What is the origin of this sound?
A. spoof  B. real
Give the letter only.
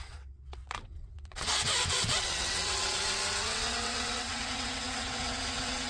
A